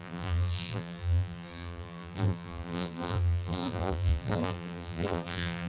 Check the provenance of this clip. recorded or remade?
remade